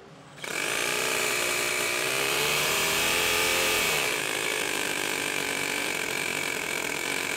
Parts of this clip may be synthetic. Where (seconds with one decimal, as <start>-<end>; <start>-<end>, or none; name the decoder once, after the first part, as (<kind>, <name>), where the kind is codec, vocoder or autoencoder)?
0.0-7.4 (vocoder, BigVGAN v2)

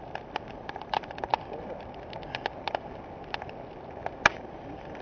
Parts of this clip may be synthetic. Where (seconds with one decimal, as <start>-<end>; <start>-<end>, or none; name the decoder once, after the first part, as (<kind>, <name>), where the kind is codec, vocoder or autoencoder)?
0.0-1.3 (vocoder, BigVGAN v2); 4.3-5.0

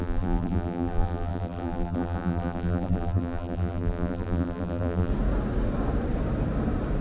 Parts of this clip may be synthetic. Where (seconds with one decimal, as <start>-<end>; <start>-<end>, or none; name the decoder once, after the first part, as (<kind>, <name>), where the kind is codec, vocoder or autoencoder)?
0.0-5.1 (vocoder, BigVGAN v2)

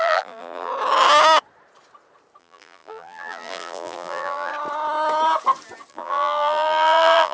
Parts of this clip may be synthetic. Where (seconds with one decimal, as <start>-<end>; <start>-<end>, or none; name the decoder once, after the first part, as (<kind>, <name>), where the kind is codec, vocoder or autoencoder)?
0.0-0.7 (vocoder, BigVGAN v2); 2.4-4.5; 5.9-7.3

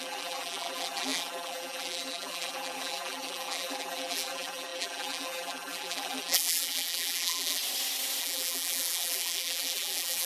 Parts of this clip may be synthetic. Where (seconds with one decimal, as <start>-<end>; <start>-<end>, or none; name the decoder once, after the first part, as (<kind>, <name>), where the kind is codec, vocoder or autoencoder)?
0.0-7.6 (vocoder, BigVGAN v2); 8.2-10.3

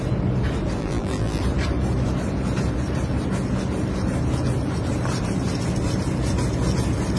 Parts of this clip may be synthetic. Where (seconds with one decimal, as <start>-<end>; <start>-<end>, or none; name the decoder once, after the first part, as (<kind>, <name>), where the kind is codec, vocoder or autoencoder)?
0.8-1.4 (vocoder, BigVGAN v2)

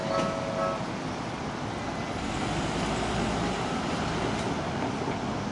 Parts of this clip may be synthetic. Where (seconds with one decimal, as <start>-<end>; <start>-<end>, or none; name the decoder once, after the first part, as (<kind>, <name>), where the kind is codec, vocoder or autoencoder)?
none

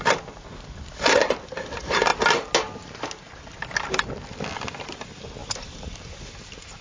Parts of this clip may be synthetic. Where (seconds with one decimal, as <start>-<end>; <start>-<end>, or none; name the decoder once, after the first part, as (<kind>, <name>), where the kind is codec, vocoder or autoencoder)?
5.4-6.8 (vocoder, BigVGAN v2)